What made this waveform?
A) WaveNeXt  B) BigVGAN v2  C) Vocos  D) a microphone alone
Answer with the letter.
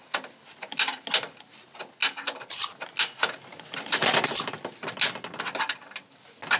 D